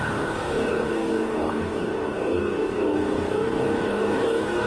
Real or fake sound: fake